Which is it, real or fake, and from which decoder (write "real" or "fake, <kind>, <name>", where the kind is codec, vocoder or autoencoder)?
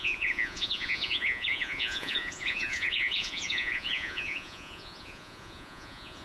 fake, vocoder, Vocos